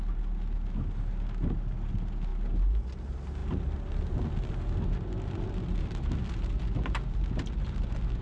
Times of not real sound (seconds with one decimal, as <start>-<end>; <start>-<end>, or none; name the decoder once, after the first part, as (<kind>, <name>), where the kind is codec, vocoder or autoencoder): none